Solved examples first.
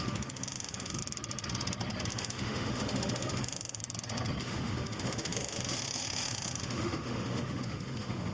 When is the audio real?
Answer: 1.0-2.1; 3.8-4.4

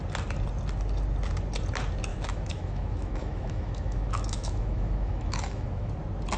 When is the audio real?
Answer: 0.0-2.1; 5.9-6.4

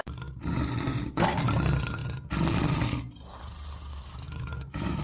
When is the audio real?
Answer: 0.0-3.9